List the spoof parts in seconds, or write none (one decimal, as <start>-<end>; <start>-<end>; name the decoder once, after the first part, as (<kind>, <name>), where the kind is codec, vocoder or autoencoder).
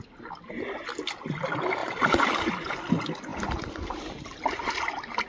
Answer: 1.8-2.3 (vocoder, BigVGAN v2)